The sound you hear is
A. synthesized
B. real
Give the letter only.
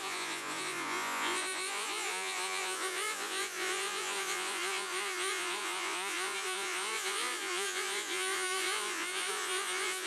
A